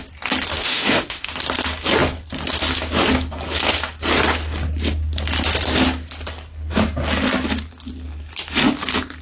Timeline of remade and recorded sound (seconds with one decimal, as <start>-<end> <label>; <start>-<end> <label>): 0.0-0.6 recorded; 0.6-1.3 remade; 1.3-9.2 recorded